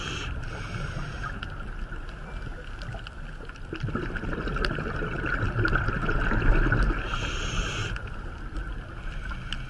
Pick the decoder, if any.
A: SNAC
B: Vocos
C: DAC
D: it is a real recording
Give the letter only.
D